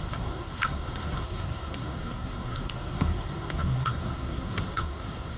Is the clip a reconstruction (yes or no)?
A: yes